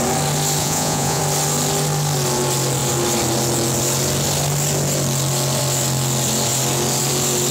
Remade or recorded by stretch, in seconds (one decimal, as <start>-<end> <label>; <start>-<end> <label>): 0.0-0.6 recorded; 0.6-1.2 remade; 1.2-7.5 recorded